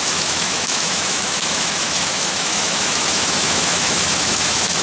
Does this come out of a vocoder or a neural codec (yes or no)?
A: yes